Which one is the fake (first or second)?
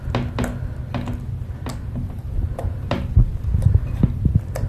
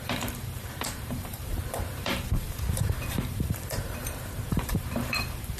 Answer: second